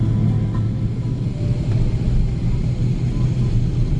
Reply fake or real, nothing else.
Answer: real